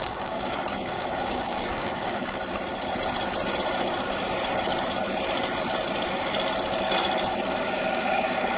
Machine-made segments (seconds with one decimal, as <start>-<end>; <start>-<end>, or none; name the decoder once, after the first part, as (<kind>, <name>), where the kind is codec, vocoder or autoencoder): 0.0-2.4 (codec, DAC); 7.6-8.6